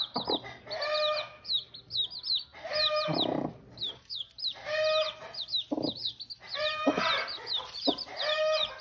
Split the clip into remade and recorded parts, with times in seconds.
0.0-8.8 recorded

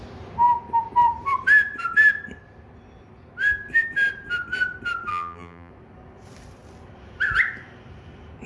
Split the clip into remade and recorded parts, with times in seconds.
0.0-5.1 recorded; 5.1-5.7 remade; 5.7-8.5 recorded

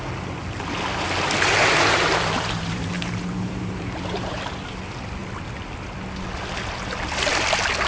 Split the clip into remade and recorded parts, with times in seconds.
0.0-1.6 recorded; 1.6-4.6 remade; 4.6-7.9 recorded